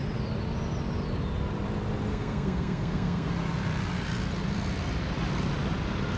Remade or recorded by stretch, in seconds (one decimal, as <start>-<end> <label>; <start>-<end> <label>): 0.0-2.1 recorded; 2.1-3.3 remade; 3.3-6.2 recorded